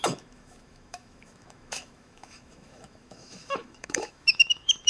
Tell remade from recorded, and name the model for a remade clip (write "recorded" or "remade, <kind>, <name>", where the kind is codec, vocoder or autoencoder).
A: remade, autoencoder, DAC-VAE